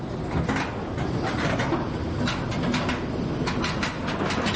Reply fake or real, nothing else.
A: real